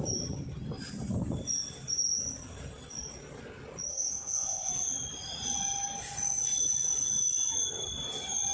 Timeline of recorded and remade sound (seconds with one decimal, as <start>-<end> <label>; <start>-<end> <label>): 0.0-3.9 recorded; 3.9-4.7 remade; 4.7-8.5 recorded

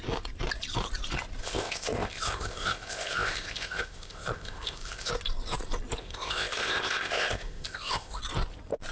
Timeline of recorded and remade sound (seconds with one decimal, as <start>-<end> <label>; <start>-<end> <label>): 0.0-1.4 recorded; 1.4-5.1 remade; 5.1-6.0 recorded; 6.0-8.2 remade; 8.2-8.9 recorded

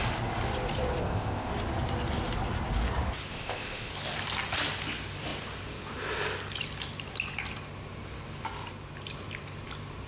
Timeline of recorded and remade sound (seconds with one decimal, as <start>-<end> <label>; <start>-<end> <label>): 0.0-1.0 recorded; 1.0-1.5 remade; 1.5-3.3 recorded; 3.3-3.9 remade; 3.9-10.1 recorded

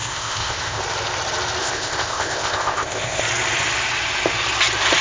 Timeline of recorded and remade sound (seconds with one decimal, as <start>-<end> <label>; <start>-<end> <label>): 0.0-0.8 remade; 0.8-1.6 recorded; 1.6-3.2 remade; 3.2-5.0 recorded

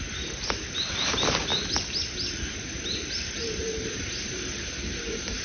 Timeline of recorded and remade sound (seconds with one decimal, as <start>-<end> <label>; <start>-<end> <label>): 0.0-5.4 recorded

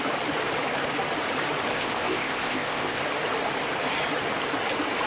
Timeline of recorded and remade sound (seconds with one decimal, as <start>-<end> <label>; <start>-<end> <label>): 0.0-1.7 recorded; 1.7-3.0 remade; 3.0-5.1 recorded

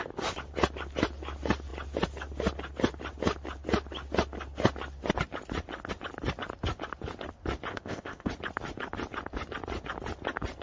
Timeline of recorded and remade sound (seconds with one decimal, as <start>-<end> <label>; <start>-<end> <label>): 0.0-7.7 recorded; 7.7-8.3 remade; 8.3-10.6 recorded